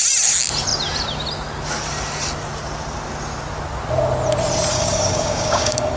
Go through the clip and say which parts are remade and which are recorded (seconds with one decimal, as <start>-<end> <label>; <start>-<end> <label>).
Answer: 0.0-4.7 recorded; 4.7-6.0 remade